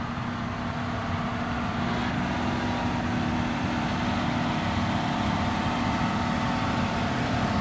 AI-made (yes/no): no